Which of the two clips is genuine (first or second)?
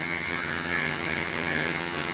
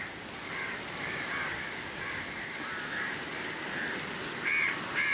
second